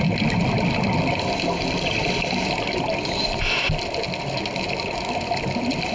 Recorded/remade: recorded